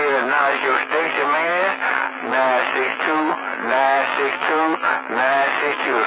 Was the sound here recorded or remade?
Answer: remade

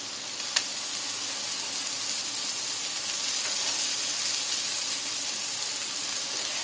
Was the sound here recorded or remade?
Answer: recorded